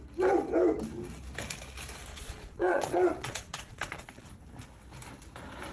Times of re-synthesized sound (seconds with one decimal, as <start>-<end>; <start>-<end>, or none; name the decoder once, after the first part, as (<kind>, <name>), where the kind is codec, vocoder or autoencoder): 2.1-4.3 (vocoder, Vocos)